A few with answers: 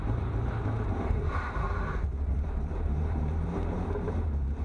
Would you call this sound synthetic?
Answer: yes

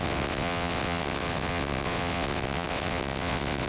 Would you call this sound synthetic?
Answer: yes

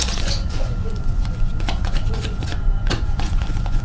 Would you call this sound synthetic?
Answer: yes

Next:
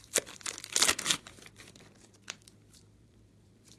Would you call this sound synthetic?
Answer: yes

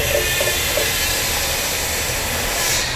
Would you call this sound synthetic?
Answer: no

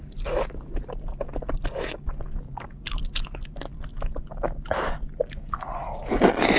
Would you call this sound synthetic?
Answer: no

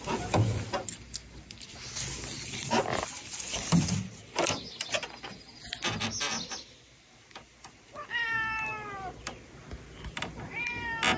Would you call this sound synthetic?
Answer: no